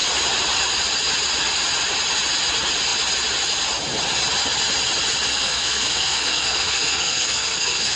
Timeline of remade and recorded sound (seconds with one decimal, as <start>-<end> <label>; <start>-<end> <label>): 0.0-5.3 recorded; 5.3-8.0 remade

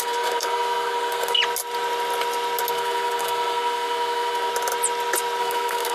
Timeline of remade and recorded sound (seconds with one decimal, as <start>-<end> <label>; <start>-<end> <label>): 0.0-1.4 remade; 1.4-2.7 recorded; 2.7-4.5 remade; 4.5-5.4 recorded; 5.4-5.9 remade

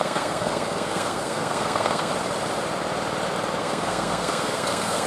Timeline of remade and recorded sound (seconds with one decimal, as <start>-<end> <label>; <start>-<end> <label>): 0.0-2.1 remade; 2.1-3.6 recorded; 3.6-5.1 remade

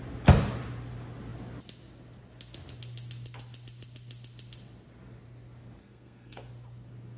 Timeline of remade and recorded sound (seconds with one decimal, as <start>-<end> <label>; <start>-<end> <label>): 0.0-5.8 recorded; 5.8-6.5 remade; 6.5-7.2 recorded